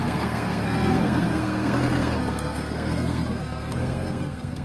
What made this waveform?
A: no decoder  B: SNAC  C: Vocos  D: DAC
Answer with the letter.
B